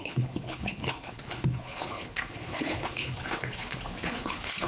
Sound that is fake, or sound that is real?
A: fake